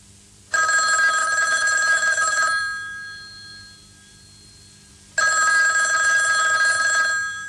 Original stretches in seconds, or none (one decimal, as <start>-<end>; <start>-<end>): 0.0-1.2; 2.6-7.5